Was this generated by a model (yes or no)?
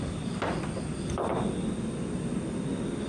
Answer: no